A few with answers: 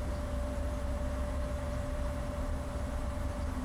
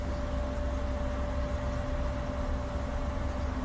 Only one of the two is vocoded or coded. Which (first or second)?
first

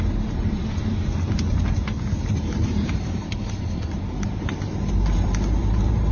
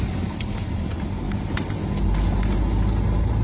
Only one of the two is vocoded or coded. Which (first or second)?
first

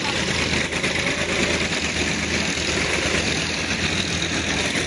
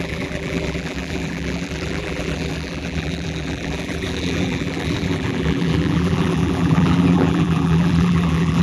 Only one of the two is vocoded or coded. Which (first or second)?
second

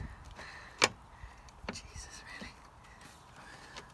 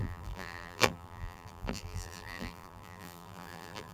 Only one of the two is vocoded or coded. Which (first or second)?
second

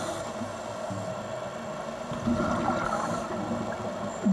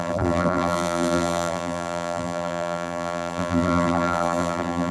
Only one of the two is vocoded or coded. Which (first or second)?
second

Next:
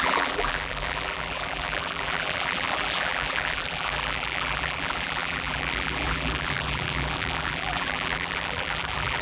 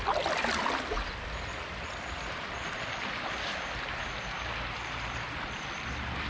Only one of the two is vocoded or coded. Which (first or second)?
first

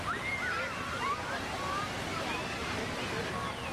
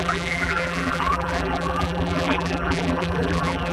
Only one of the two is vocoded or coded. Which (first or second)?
second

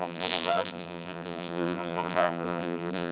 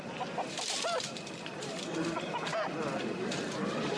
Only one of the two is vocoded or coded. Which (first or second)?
first